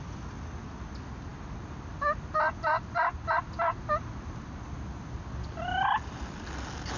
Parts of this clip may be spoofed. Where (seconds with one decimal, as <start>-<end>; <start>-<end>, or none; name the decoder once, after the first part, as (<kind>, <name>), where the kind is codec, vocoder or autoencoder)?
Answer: none

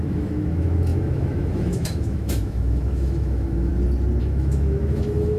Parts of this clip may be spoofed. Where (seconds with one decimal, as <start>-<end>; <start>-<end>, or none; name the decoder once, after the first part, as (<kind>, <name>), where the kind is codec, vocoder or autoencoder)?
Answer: 0.0-3.7 (autoencoder, DAC-VAE); 4.2-5.4

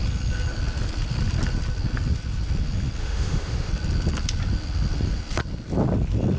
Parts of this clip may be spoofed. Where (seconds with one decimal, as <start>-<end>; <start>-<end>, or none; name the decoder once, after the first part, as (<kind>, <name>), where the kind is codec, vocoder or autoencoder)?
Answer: 3.0-3.7 (autoencoder, DAC-VAE)

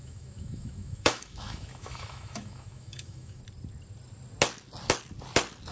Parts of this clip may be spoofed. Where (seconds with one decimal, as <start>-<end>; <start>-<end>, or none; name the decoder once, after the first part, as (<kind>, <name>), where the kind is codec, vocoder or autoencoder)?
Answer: 0.0-3.4 (autoencoder, DAC-VAE)